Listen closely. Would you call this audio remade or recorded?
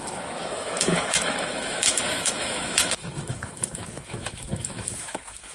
remade